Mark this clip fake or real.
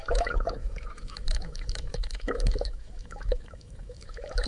fake